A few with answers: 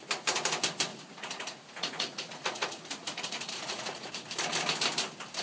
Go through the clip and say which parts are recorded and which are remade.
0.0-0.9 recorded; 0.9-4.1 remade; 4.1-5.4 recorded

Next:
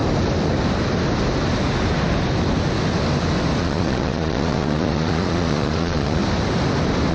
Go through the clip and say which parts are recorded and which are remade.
0.0-3.6 recorded; 3.6-6.2 remade; 6.2-7.1 recorded